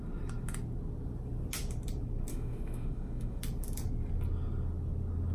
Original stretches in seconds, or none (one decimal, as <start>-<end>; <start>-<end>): 0.0-2.3; 3.4-5.3